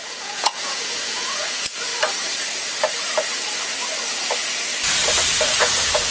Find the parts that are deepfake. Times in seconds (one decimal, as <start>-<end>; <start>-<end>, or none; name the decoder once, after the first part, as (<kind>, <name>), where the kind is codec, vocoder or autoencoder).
0.0-1.9 (vocoder, Vocos); 5.6-6.1